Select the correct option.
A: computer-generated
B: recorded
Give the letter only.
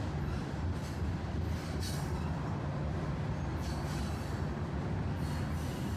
B